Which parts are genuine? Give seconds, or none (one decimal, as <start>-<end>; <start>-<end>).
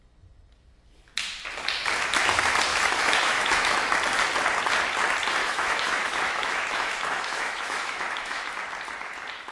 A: 0.0-2.7; 3.7-5.4; 8.5-9.5